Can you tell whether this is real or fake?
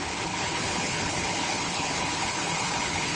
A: fake